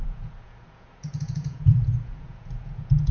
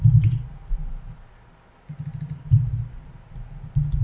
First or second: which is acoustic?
second